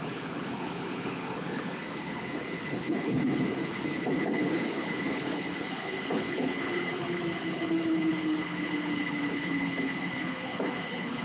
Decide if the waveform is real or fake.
fake